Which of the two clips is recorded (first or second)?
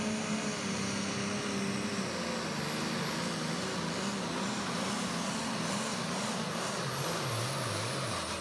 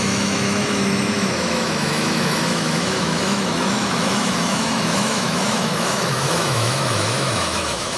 first